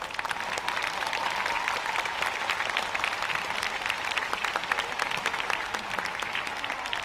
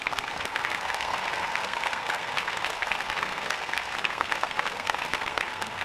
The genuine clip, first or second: first